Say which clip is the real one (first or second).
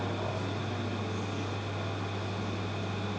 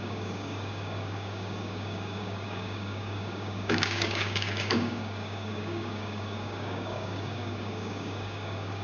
first